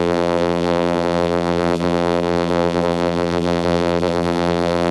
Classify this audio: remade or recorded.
remade